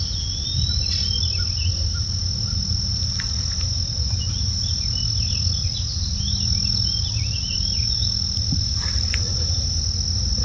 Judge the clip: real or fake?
real